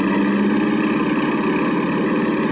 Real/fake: real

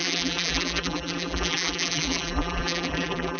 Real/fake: fake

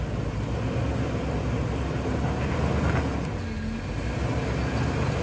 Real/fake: real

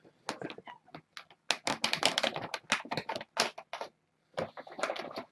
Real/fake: real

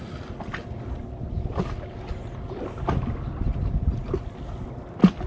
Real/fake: real